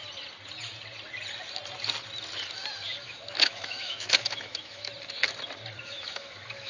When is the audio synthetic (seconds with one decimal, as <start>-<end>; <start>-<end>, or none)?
3.0-4.9; 5.8-6.7